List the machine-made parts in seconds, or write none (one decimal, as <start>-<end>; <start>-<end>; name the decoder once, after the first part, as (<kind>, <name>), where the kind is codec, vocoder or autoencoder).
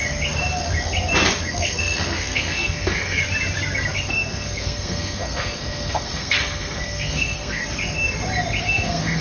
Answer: 1.5-3.2 (codec, SNAC); 4.1-7.6; 8.6-9.2